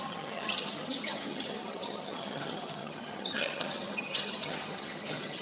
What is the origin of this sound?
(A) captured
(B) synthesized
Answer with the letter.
B